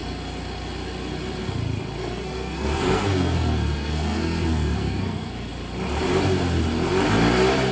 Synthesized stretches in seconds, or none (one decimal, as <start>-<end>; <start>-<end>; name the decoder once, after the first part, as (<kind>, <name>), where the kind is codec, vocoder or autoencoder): 2.0-5.5 (codec, SNAC)